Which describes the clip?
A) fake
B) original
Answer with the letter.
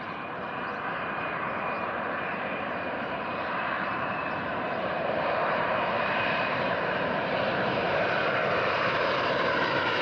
A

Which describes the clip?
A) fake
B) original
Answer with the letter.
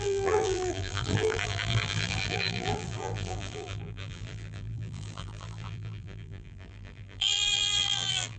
A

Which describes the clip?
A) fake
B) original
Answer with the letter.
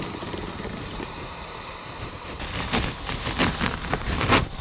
A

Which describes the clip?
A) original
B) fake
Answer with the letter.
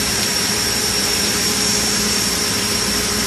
B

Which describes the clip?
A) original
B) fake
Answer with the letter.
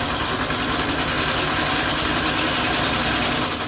A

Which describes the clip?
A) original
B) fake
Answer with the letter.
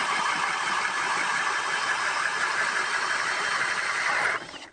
A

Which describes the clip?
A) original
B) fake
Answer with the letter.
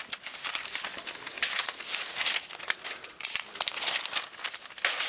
A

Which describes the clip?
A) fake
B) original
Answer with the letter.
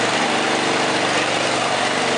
A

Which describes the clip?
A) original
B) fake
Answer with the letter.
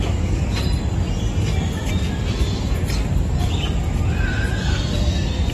A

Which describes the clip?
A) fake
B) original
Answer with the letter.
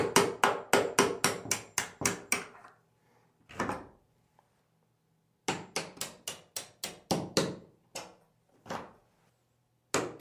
B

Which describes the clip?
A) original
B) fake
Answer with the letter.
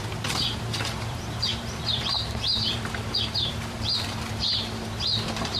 B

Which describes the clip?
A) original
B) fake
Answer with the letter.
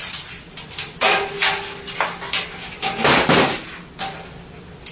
A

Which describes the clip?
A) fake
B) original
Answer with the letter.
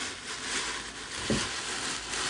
B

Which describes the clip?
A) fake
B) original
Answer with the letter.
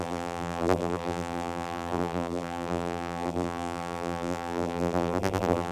A